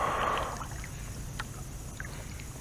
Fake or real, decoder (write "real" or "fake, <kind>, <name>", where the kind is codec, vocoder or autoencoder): real